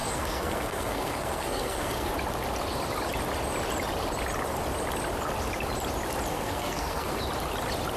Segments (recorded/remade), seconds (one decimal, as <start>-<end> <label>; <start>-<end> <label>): 0.0-2.1 remade; 2.1-6.3 recorded; 6.3-7.2 remade; 7.2-8.0 recorded